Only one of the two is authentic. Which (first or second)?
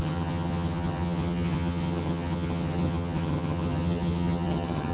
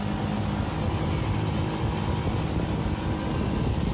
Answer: second